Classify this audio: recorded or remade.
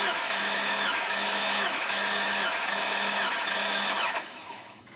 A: remade